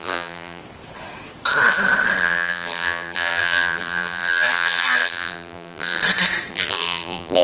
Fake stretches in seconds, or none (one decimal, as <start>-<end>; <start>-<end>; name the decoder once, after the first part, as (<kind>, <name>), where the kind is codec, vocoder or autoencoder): 0.0-0.6 (vocoder, BigVGAN v2); 2.2-6.0; 6.5-7.4